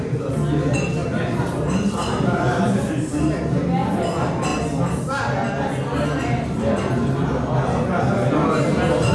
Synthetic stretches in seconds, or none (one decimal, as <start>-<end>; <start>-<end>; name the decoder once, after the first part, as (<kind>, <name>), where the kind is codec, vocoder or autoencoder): 1.0-2.9 (vocoder, BigVGAN v2)